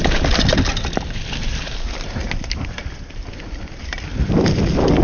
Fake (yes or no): no